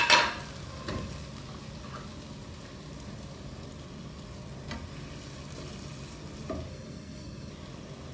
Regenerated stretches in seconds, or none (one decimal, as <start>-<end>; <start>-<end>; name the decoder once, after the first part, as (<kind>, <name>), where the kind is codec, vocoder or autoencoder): 6.7-7.5 (codec, SNAC)